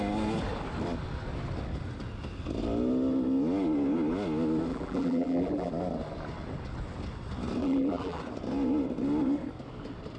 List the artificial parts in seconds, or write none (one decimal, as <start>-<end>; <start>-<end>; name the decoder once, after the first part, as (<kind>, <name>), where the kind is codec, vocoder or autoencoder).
4.7-5.7 (vocoder, BigVGAN v2); 7.6-8.2

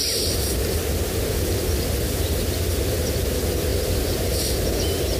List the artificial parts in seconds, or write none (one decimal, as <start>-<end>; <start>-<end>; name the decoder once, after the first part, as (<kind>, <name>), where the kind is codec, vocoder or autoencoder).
3.7-4.4 (vocoder, BigVGAN v2)

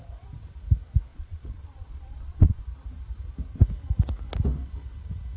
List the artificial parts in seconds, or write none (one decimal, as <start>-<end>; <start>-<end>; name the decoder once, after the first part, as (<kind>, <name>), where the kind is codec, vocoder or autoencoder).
1.1-2.6 (vocoder, Vocos)

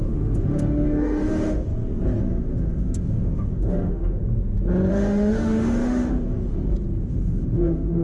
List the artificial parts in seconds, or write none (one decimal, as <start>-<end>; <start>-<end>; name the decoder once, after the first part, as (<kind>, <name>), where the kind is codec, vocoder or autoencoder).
0.0-1.7 (autoencoder, DAC-VAE); 2.2-4.2; 4.9-6.6; 7.1-8.0

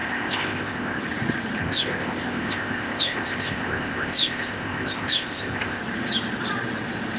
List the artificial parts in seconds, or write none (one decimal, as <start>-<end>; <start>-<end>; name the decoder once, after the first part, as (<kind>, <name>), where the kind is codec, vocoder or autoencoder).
0.0-1.0 (codec, ZipCodec); 1.6-5.8